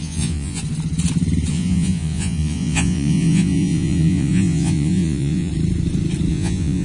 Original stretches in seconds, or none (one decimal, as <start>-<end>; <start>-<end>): 0.6-1.5; 5.5-6.3